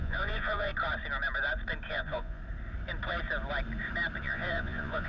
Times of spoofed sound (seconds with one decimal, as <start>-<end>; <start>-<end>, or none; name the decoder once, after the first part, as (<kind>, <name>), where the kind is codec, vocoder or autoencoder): 0.0-0.7 (vocoder, Vocos); 1.9-2.4; 4.2-5.1